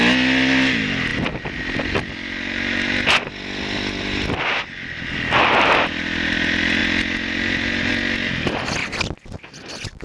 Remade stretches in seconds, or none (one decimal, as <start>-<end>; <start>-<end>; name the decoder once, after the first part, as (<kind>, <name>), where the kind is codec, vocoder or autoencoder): none